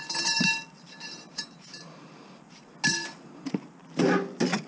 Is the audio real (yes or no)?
yes